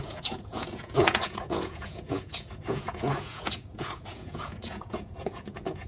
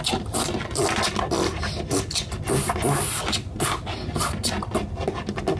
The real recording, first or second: second